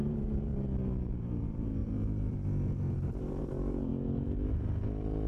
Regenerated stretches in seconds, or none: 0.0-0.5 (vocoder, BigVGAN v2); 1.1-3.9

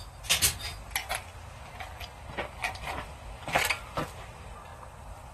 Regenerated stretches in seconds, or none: none

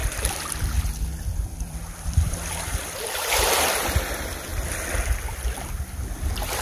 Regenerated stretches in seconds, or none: 0.0-4.5 (vocoder, BigVGAN v2); 6.1-6.6

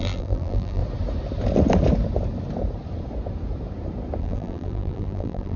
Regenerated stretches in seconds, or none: 0.0-0.8 (vocoder, BigVGAN v2); 4.2-5.6

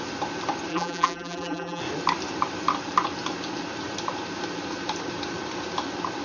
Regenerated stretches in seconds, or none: 0.7-1.8 (vocoder, BigVGAN v2)